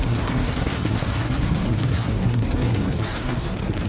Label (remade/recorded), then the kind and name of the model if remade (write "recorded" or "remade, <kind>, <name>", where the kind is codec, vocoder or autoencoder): remade, codec, SNAC